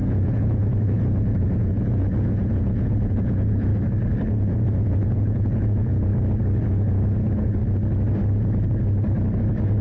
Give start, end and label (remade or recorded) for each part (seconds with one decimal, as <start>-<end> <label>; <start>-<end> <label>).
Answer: 0.0-3.7 remade; 3.7-4.3 recorded; 4.3-6.1 remade; 6.1-6.6 recorded; 6.6-7.6 remade; 7.6-9.4 recorded; 9.4-9.8 remade